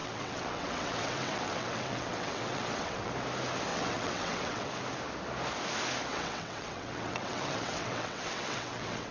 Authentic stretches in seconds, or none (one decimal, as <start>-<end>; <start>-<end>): 3.1-3.7; 4.7-6.1

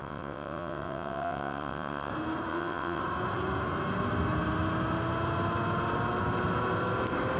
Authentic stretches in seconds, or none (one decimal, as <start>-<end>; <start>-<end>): 2.1-2.5; 3.0-7.4

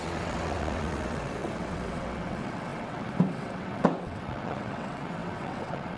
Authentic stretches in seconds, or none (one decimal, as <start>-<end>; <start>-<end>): none

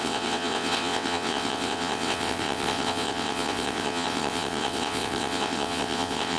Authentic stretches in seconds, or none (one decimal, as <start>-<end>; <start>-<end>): none

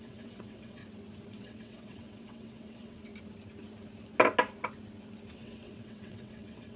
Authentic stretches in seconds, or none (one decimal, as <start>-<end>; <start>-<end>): 0.8-1.3; 3.1-5.3

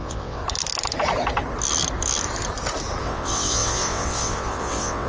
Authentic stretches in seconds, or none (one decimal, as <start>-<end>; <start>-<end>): 0.4-3.0

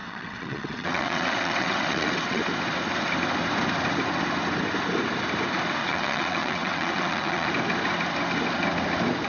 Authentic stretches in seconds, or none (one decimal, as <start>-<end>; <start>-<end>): 2.4-5.8; 7.5-9.3